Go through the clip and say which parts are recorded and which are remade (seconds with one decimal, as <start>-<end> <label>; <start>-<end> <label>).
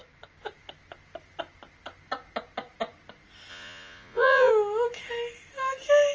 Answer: 0.0-3.5 recorded; 3.5-4.5 remade; 4.5-6.1 recorded